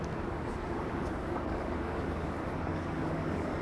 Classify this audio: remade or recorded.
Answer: remade